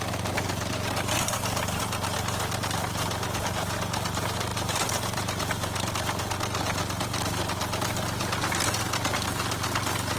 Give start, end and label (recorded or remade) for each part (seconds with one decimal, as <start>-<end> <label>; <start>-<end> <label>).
0.0-4.5 recorded; 4.5-5.9 remade; 5.9-10.2 recorded